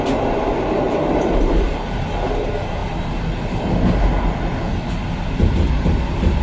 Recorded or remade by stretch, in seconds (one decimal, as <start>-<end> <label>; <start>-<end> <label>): 0.0-6.4 recorded